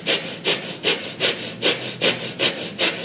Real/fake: real